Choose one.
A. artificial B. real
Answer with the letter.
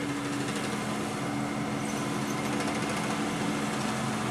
B